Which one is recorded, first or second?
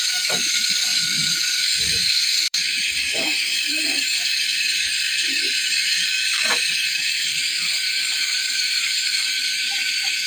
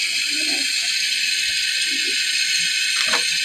second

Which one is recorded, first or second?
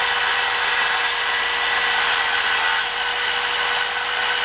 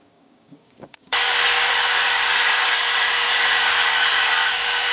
first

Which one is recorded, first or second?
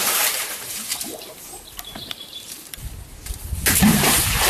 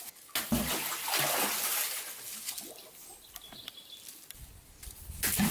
second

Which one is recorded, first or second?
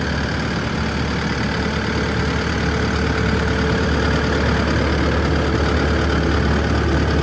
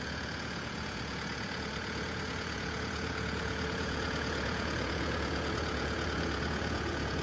first